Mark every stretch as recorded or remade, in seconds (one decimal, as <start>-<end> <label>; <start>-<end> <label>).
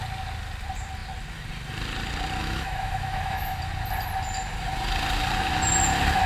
0.0-2.4 recorded; 2.4-3.6 remade; 3.6-6.3 recorded